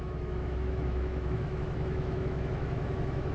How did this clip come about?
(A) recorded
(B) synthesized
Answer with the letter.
B